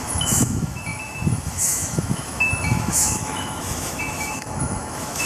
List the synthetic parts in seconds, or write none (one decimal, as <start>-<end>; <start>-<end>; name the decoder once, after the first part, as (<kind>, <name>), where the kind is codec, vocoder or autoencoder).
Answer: 0.0-5.3 (autoencoder, DAC-VAE)